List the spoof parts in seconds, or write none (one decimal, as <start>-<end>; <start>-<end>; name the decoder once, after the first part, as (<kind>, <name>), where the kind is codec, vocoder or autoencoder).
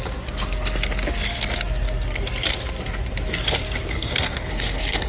3.9-5.1 (codec, SNAC)